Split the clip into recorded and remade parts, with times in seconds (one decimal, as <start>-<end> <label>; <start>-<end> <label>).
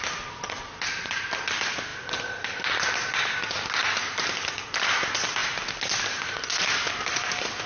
0.0-7.7 recorded